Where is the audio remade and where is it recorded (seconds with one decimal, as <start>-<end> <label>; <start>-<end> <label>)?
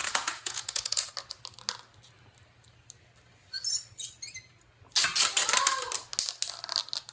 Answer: 0.0-1.1 remade; 1.1-7.1 recorded